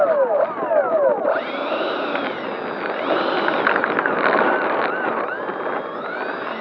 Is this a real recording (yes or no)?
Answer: yes